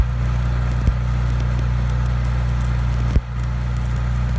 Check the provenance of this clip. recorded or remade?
recorded